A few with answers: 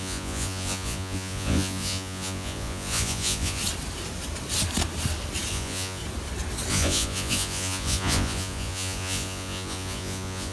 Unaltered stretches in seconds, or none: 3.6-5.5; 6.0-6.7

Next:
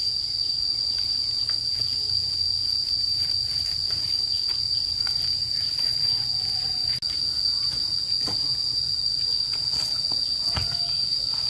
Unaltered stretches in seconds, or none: 0.0-11.5

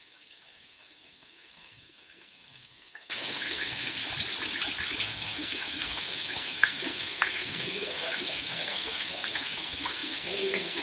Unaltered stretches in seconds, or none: 4.0-5.0

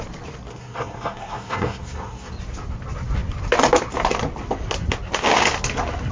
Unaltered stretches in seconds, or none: 0.0-0.5; 2.3-6.1

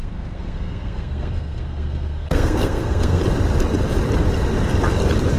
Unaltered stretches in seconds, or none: 3.2-5.4

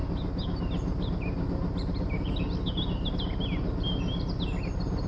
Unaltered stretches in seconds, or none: 0.0-5.1

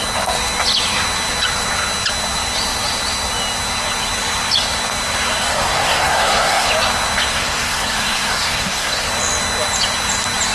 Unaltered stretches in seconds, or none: 0.0-5.5; 6.7-7.3; 9.1-10.5

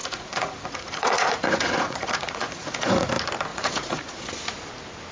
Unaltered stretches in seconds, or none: 3.1-3.5; 4.2-5.1